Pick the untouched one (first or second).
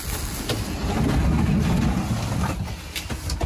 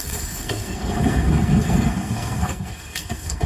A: first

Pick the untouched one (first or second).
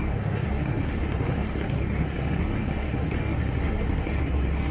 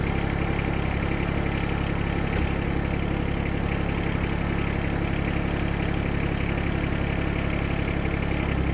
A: second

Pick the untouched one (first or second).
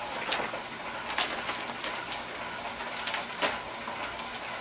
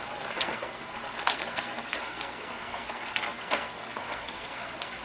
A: first